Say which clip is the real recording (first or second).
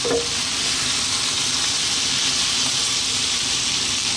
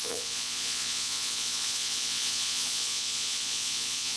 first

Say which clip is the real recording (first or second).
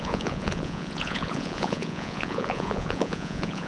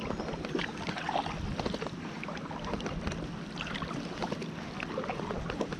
second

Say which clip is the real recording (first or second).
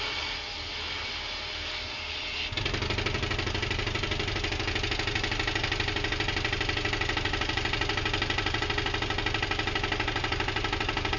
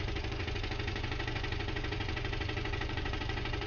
first